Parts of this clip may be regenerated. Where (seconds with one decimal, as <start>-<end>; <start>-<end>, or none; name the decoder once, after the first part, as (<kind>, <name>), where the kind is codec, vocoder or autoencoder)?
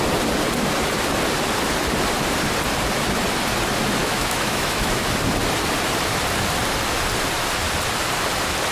4.0-5.0 (autoencoder, DAC-VAE)